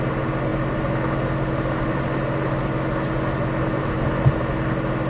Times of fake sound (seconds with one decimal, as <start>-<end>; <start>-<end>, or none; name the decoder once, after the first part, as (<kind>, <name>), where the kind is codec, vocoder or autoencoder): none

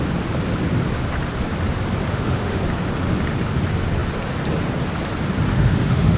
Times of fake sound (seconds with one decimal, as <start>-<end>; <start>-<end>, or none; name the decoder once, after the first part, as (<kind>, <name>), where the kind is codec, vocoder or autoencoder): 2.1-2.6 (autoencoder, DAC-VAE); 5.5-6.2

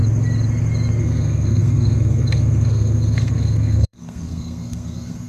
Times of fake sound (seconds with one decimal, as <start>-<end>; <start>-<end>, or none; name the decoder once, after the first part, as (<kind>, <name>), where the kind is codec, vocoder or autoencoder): 1.0-5.3 (codec, SNAC)